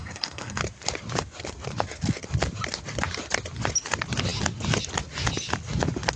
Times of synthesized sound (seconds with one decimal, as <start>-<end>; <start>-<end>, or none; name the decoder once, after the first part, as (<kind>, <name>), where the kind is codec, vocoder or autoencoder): 0.0-0.6 (codec, SNAC)